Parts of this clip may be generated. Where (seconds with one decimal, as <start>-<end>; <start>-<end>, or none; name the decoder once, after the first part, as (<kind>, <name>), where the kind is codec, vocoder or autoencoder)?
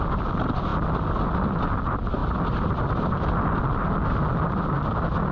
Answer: none